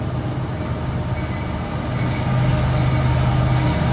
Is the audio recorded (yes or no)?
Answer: yes